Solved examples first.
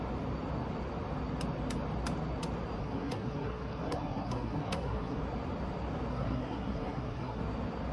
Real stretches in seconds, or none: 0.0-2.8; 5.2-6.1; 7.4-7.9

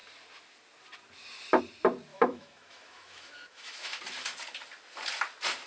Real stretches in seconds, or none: 0.0-2.1; 4.0-5.7

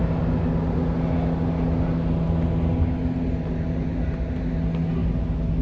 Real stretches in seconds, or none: 0.0-5.6